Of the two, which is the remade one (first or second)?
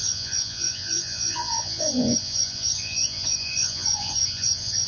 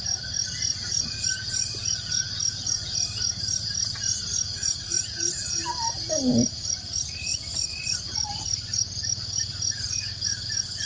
first